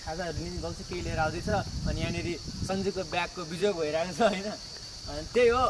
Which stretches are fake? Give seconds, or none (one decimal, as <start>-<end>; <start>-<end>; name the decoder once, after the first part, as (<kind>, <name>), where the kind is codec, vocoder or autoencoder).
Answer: none